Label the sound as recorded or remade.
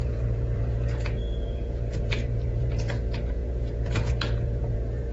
remade